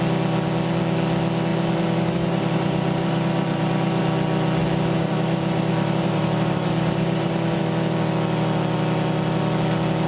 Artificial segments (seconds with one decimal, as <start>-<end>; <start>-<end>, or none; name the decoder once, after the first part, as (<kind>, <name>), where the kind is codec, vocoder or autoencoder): 1.5-4.1 (vocoder, BigVGAN v2); 4.6-7.6